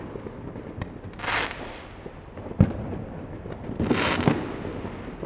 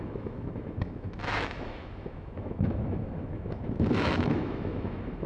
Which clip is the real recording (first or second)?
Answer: first